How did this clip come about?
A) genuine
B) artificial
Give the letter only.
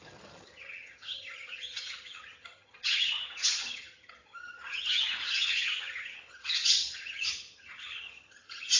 B